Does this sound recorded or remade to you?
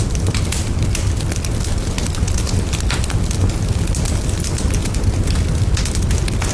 recorded